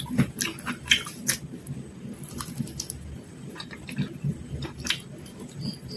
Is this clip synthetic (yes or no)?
no